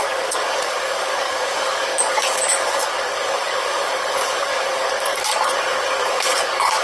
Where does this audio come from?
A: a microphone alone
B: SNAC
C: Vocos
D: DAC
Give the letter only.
D